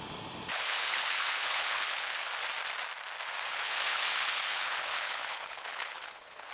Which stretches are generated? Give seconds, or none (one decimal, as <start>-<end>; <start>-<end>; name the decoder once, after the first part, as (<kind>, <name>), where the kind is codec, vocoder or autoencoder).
0.5-2.3 (codec, HILCodec); 3.5-6.5